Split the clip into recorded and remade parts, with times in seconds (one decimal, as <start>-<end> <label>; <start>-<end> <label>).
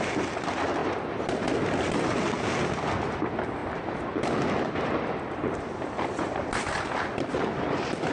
0.0-8.1 recorded